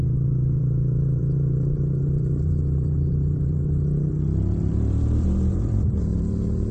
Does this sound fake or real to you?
fake